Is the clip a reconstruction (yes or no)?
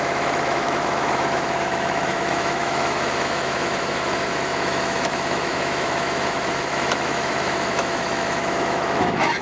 yes